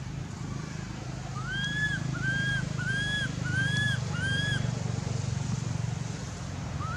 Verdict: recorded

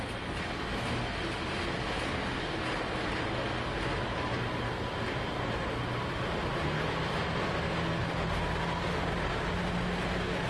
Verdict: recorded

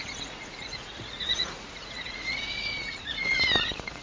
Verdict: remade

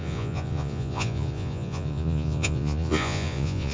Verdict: remade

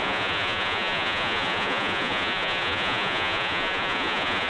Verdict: remade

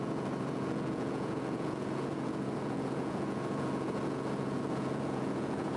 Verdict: remade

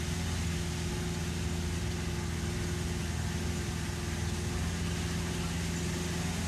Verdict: recorded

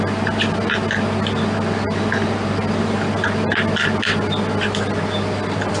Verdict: recorded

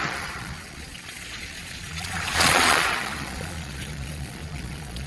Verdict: remade